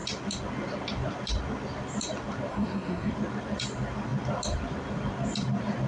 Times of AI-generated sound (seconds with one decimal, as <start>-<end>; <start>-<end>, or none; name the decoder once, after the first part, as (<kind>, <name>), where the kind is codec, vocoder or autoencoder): 2.5-3.1 (codec, SNAC)